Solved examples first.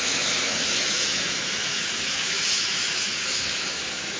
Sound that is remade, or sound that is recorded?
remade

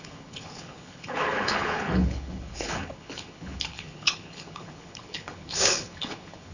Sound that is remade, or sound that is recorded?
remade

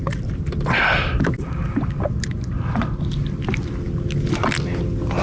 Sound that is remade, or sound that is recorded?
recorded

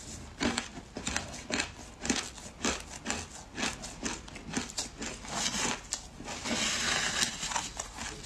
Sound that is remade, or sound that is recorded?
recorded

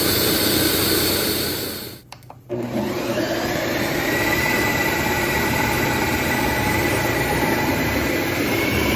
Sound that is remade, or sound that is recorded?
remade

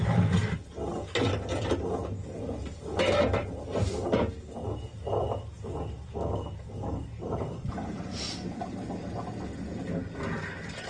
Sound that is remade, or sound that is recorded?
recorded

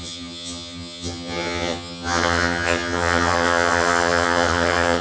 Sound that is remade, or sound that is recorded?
remade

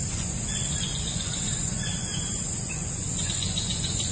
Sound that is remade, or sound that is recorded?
remade